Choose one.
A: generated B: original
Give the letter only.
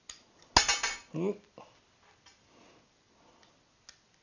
B